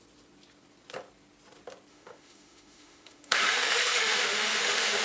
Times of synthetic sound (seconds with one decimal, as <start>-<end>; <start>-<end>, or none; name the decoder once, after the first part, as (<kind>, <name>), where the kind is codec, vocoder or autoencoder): 1.9-5.0 (autoencoder, DAC-VAE)

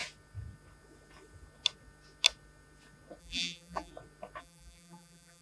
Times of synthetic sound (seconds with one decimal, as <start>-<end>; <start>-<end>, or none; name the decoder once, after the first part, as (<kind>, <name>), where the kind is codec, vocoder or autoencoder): 3.2-3.9 (vocoder, BigVGAN v2); 4.4-5.4

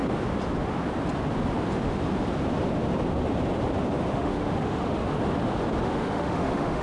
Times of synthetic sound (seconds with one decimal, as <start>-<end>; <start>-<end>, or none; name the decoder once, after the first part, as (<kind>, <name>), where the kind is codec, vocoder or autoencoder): 4.1-5.0 (autoencoder, DAC-VAE); 5.8-6.8

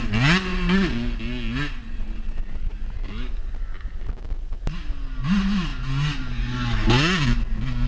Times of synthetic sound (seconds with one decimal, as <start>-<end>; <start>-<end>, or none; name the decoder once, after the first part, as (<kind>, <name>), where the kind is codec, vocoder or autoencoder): 1.8-2.7 (vocoder, Vocos)

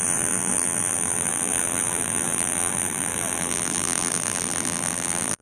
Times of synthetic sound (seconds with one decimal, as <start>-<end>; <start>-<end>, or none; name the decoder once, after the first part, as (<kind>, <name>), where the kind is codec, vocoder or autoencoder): 0.0-5.4 (vocoder, BigVGAN v2)

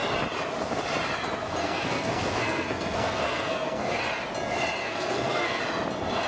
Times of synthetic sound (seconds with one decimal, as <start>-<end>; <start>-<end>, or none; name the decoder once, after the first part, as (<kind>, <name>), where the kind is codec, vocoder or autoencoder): 1.6-4.0 (codec, SNAC); 4.8-5.6

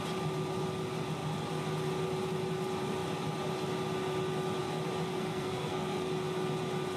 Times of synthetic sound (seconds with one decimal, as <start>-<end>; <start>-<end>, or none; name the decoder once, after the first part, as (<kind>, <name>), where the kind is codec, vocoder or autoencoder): 5.1-6.1 (codec, SNAC)

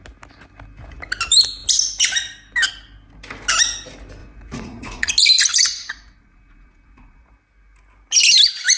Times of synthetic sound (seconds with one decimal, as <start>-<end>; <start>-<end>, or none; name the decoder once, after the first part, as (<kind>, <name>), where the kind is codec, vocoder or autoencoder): 4.2-5.1 (vocoder, Vocos); 5.5-7.3